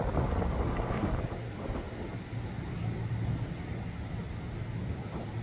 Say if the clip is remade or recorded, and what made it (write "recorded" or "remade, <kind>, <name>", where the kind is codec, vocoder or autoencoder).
recorded